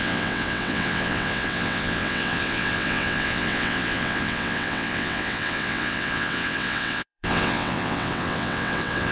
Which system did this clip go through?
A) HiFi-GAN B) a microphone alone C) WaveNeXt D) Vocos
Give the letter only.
C